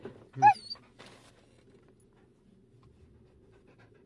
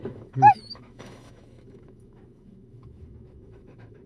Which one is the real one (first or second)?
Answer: first